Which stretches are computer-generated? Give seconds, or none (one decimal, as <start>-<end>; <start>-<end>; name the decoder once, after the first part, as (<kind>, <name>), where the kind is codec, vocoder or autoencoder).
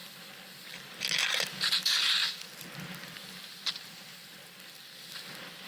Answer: none